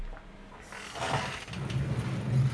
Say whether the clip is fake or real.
real